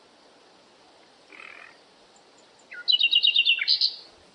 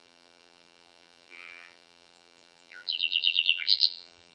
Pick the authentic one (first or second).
first